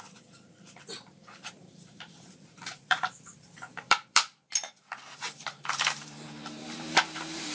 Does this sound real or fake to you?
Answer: fake